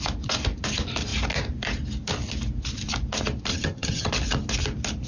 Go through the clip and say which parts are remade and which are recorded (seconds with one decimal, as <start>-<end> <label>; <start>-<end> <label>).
0.0-3.5 recorded; 3.5-4.1 remade; 4.1-5.1 recorded